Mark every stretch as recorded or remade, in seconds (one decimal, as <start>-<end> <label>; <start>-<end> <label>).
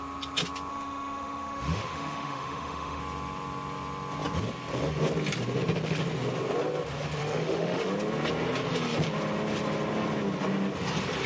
0.0-0.7 recorded; 0.7-3.0 remade; 3.0-7.2 recorded; 7.2-7.9 remade; 7.9-11.3 recorded